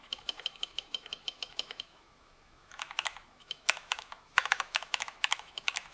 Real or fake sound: fake